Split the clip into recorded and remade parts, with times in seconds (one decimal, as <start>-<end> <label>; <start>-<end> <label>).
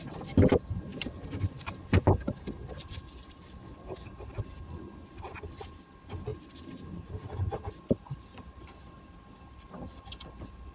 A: 0.0-0.9 recorded; 0.9-4.4 remade; 4.4-6.3 recorded; 6.3-8.6 remade; 8.6-10.7 recorded